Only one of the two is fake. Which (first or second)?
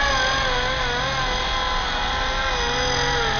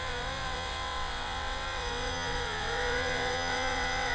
second